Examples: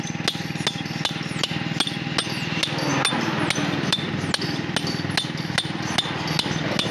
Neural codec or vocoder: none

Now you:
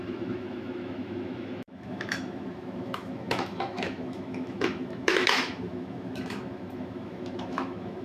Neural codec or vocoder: autoencoder, DAC-VAE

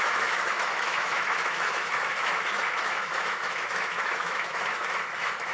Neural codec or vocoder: autoencoder, DAC-VAE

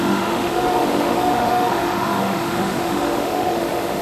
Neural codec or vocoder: autoencoder, DAC-VAE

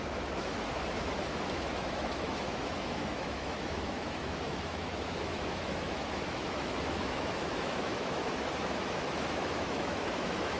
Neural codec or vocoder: autoencoder, DAC-VAE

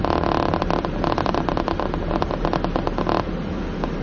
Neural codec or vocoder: none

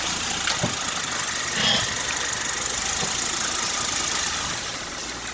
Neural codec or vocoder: none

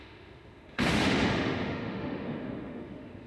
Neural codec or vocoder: autoencoder, DAC-VAE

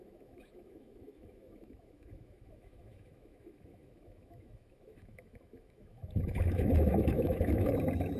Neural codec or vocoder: autoencoder, DAC-VAE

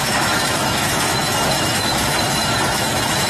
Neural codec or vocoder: autoencoder, DAC-VAE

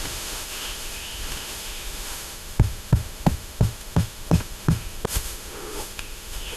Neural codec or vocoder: autoencoder, DAC-VAE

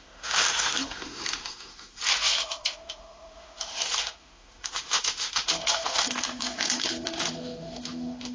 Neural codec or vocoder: autoencoder, DAC-VAE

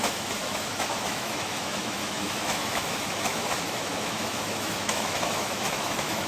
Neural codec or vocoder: autoencoder, DAC-VAE